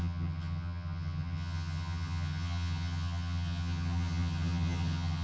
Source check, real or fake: fake